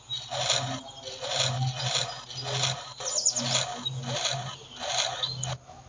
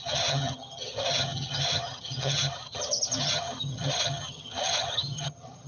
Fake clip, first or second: second